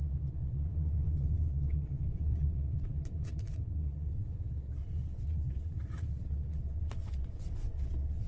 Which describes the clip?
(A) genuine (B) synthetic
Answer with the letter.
B